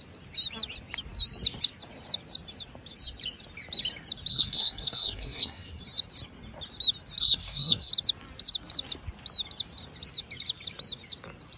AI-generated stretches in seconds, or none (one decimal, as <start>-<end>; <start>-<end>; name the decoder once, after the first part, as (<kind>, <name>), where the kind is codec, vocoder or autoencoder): 4.3-5.8 (codec, SNAC); 7.2-7.9

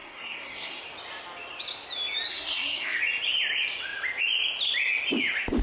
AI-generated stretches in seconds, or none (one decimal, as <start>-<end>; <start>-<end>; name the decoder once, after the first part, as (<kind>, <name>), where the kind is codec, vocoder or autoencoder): 0.0-0.8 (codec, SNAC); 2.3-3.0

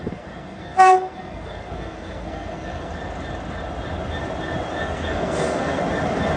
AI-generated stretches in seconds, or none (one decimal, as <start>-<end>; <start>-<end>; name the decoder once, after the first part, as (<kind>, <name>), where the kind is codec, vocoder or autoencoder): 0.0-2.9 (codec, SNAC); 4.8-5.8

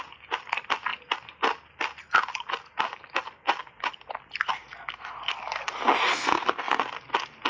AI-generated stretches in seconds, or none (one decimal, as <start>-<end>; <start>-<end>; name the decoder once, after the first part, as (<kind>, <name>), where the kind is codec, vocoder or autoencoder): 6.1-6.8 (codec, SNAC)

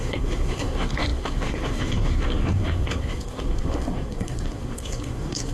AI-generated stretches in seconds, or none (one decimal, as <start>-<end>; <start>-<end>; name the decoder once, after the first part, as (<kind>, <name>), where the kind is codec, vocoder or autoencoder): 0.0-5.5 (codec, SNAC)